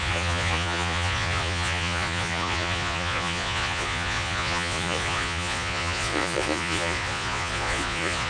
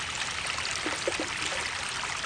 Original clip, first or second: second